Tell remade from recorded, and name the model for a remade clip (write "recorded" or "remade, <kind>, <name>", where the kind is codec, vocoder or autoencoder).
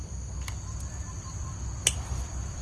recorded